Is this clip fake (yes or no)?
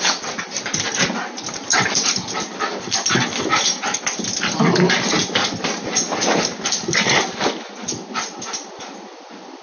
no